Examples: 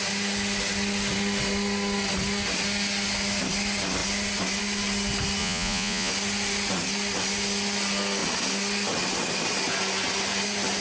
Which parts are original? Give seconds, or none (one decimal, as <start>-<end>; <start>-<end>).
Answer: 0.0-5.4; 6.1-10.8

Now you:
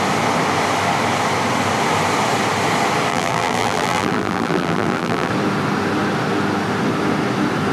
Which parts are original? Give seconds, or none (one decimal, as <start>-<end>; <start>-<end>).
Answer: 0.0-3.1; 5.3-7.7

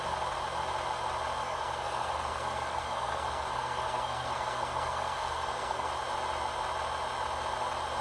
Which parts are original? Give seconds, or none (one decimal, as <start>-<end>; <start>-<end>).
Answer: 0.0-1.4; 5.9-8.0

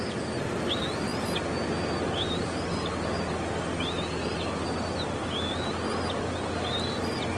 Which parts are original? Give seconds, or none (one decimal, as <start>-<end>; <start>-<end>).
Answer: 0.0-7.4

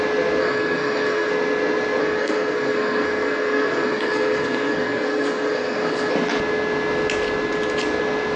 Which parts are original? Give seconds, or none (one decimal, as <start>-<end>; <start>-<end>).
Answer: 0.0-0.4; 1.3-2.0; 6.1-8.4

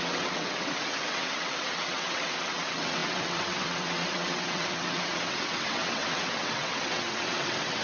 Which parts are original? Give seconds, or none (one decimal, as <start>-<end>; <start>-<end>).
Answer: none

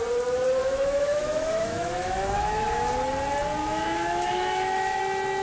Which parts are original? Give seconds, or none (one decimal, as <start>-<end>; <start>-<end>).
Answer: 0.0-0.6; 2.9-3.6; 5.0-5.4